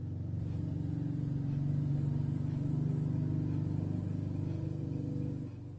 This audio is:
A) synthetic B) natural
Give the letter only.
B